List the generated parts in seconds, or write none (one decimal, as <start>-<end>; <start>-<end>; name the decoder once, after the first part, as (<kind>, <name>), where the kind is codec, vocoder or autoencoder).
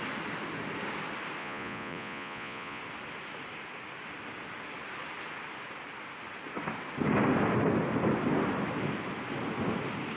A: 1.4-2.8 (vocoder, Vocos)